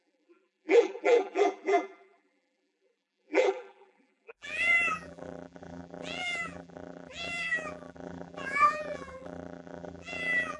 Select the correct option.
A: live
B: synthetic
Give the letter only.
B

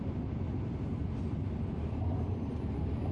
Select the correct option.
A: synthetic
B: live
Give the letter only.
A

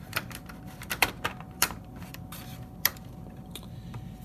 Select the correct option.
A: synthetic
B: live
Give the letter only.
A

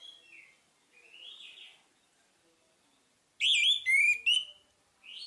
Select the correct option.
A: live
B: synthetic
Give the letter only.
A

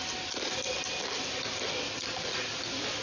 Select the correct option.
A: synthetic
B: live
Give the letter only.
B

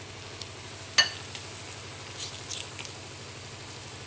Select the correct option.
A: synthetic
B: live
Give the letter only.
B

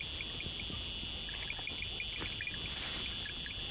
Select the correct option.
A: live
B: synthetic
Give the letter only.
A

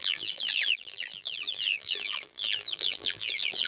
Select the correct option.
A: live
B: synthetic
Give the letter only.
B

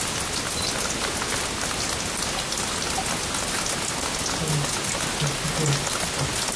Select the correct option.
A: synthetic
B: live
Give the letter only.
B